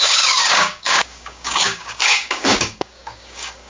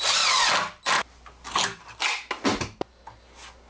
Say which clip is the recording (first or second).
second